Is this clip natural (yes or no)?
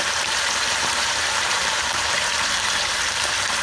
no